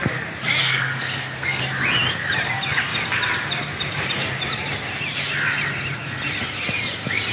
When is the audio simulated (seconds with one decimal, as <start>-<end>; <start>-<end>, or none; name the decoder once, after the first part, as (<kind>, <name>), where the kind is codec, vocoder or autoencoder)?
0.6-1.6 (codec, SNAC)